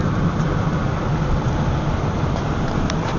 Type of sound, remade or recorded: remade